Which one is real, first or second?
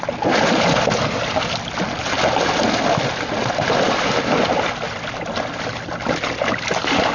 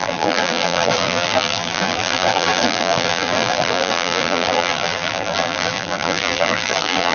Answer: first